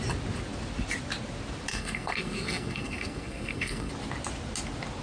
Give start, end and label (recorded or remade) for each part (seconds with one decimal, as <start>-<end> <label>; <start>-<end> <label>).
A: 0.0-1.7 recorded; 1.7-3.9 remade; 3.9-5.0 recorded